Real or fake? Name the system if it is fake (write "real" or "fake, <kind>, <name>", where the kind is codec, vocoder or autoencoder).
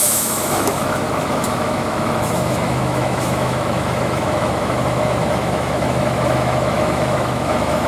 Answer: fake, autoencoder, DAC-VAE